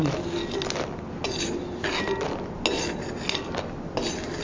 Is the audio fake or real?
real